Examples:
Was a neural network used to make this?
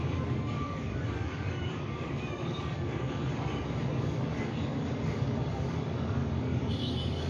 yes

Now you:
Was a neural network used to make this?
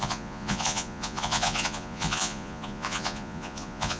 yes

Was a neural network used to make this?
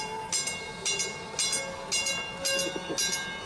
no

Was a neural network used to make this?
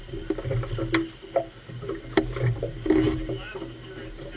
no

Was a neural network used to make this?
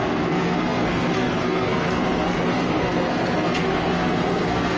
yes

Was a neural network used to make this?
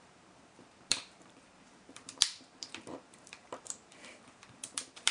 yes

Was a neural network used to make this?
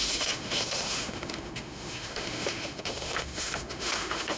yes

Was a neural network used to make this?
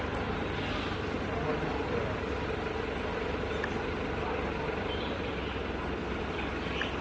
no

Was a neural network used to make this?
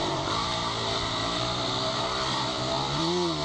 yes